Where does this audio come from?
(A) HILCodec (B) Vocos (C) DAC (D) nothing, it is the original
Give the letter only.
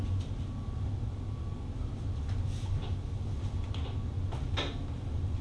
D